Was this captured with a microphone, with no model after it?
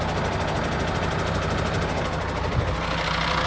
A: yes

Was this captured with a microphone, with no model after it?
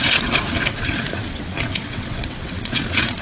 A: no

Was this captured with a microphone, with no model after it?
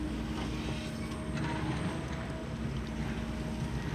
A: yes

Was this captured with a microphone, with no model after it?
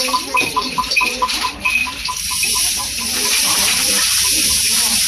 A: no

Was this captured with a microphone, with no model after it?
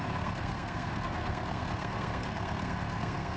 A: no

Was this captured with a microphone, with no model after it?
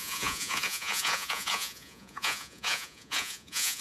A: no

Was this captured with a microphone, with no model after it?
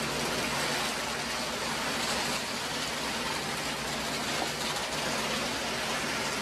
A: yes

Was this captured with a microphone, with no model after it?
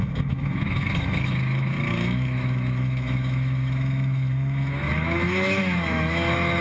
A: no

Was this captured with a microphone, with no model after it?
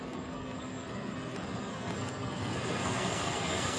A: no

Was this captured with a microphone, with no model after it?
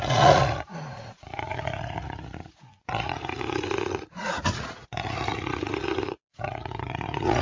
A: no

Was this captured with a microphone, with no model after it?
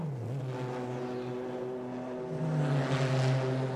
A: yes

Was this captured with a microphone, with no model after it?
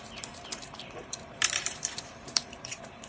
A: no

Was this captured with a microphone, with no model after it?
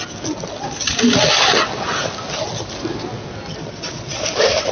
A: yes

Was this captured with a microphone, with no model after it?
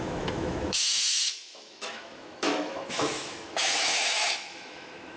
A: no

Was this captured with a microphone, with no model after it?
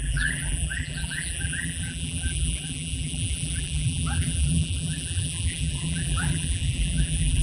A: no